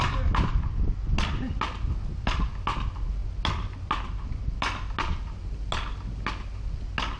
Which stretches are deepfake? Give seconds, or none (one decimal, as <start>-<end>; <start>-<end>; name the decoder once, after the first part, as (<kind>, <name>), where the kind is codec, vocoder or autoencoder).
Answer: none